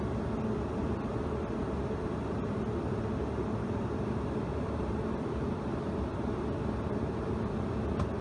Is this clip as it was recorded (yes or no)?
yes